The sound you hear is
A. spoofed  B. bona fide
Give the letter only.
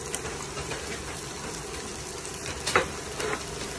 B